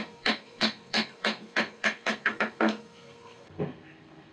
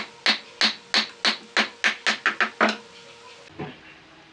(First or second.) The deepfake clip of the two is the first